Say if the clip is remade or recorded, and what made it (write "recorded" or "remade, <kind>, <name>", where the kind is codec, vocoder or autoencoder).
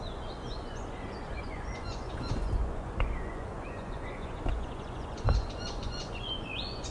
remade, vocoder, Vocos